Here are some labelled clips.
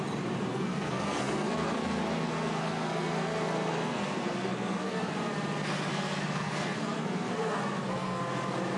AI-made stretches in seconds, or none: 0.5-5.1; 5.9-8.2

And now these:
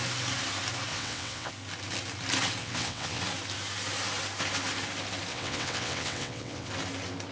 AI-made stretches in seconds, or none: 0.9-1.5; 2.6-3.2; 5.3-6.7

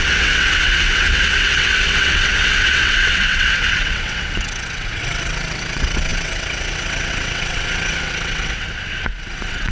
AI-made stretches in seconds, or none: 0.0-9.7

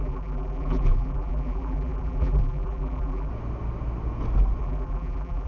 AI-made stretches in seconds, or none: 0.0-3.3; 4.6-5.5

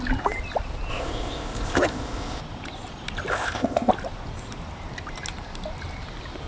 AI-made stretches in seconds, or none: 0.9-2.4; 3.3-3.9

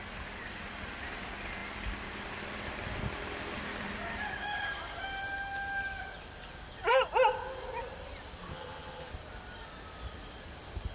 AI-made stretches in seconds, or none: 8.5-9.1

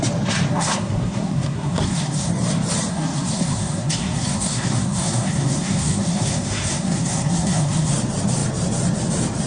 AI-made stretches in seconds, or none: 0.5-2.3; 2.9-7.9

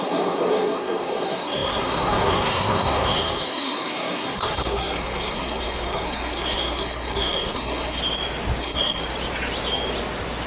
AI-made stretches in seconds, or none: 0.0-8.0; 8.6-9.0